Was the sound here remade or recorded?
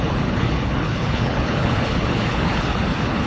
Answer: remade